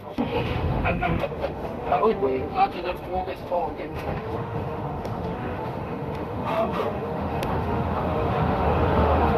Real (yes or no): no